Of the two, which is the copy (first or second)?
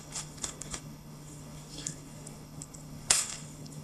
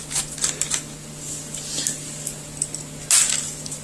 first